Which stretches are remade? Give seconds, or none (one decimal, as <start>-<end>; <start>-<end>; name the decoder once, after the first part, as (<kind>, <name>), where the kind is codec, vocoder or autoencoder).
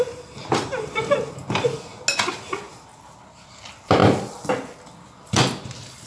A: none